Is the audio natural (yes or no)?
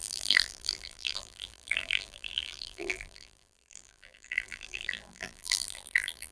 no